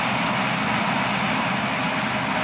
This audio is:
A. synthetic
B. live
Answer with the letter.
B